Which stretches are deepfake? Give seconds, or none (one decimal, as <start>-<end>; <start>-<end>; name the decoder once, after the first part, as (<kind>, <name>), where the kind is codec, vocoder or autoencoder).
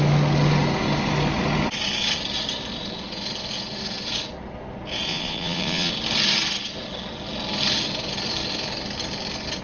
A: 5.1-5.9 (vocoder, Vocos)